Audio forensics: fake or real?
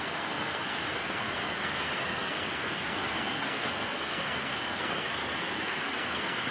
fake